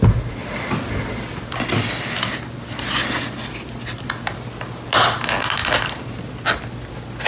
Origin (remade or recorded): recorded